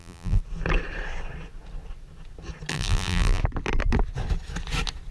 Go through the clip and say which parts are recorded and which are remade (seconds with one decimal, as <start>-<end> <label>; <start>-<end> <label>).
0.0-0.4 remade; 0.4-2.7 recorded; 2.7-3.4 remade; 3.4-5.1 recorded

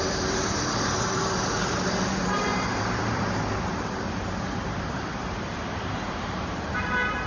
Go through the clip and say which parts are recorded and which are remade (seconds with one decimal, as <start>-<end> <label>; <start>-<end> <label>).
0.0-7.3 remade

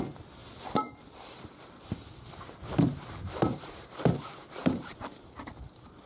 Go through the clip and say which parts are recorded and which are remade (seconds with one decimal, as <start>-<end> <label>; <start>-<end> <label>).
0.0-0.4 recorded; 0.4-1.8 remade; 1.8-3.5 recorded; 3.5-4.0 remade; 4.0-4.6 recorded; 4.6-5.4 remade; 5.4-6.1 recorded

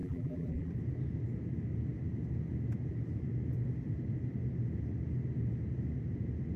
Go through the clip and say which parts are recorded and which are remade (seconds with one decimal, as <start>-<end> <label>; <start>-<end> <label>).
0.0-0.7 remade; 0.7-6.6 recorded

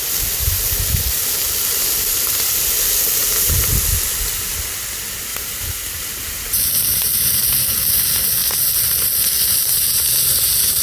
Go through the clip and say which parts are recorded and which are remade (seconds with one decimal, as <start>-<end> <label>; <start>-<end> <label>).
0.0-5.3 recorded; 5.3-6.6 remade; 6.6-10.8 recorded

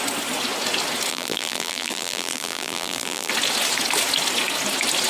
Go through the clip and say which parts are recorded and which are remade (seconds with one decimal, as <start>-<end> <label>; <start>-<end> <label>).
0.0-1.1 recorded; 1.1-3.3 remade; 3.3-5.1 recorded

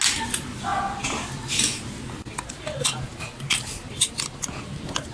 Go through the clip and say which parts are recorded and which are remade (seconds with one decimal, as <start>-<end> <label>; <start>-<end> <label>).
0.0-5.1 recorded